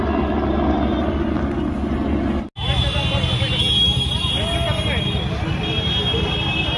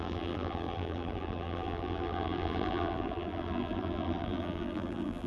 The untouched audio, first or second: first